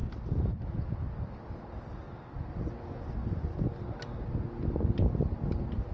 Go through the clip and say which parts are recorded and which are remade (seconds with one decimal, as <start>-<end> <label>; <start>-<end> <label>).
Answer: 0.0-5.9 recorded